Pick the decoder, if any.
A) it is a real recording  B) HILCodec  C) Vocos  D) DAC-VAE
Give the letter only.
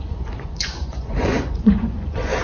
C